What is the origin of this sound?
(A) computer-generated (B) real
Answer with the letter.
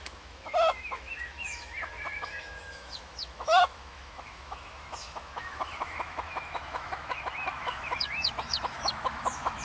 A